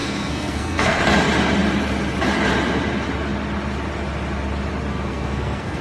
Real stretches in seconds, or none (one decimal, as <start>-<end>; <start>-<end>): 1.0-4.9